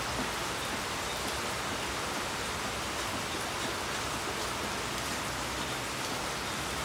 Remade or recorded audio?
recorded